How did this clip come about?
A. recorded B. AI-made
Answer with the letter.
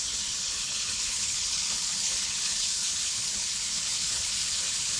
B